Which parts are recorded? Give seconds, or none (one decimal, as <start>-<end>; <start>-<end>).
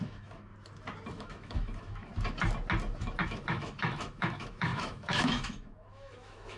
0.5-1.1; 2.1-3.0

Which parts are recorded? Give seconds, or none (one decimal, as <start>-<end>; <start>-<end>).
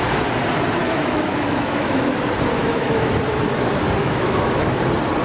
0.0-0.8; 2.0-2.6; 3.1-4.0; 4.8-5.2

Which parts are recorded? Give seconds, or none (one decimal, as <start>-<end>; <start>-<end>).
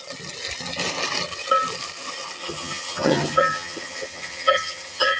0.0-2.4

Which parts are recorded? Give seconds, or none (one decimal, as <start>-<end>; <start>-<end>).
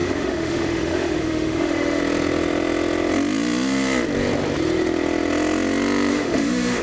2.0-6.1